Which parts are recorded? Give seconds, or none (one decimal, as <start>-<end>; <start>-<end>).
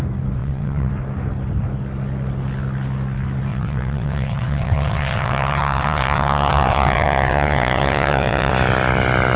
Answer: 0.0-0.4; 0.9-3.5; 8.5-9.4